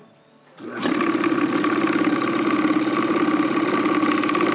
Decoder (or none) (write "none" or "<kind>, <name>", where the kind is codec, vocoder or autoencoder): none